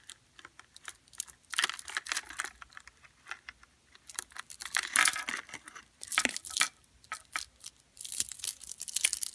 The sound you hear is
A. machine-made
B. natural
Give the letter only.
B